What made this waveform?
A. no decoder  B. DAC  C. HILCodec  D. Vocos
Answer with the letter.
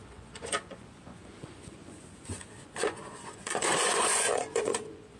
D